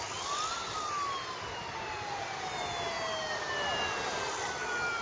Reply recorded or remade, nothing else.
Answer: recorded